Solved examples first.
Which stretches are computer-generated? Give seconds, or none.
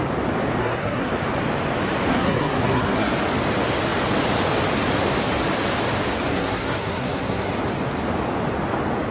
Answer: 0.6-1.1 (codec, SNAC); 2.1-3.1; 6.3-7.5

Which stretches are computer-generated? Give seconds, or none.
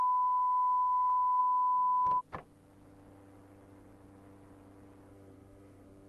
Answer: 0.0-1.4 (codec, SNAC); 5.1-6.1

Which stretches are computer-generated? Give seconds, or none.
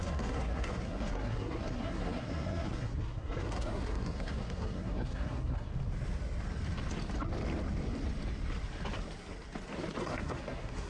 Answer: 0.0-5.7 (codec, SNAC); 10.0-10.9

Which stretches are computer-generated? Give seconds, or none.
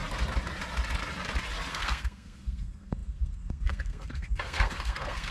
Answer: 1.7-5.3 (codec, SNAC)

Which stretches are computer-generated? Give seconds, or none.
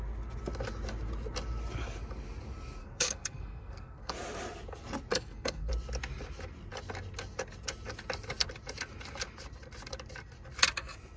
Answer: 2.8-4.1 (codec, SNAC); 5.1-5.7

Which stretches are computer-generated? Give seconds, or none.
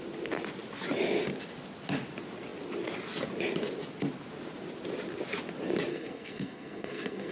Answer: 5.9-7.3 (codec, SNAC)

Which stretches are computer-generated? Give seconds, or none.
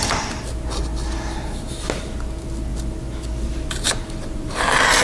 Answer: none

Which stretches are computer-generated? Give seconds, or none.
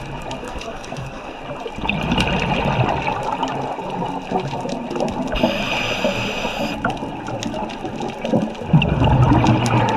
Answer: 0.4-1.4 (codec, SNAC)